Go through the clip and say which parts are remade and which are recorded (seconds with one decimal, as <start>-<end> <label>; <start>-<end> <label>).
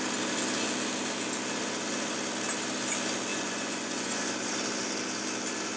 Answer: 0.0-3.3 recorded; 3.3-4.2 remade; 4.2-5.8 recorded